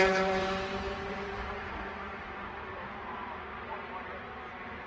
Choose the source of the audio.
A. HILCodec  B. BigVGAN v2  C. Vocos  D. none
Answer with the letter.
B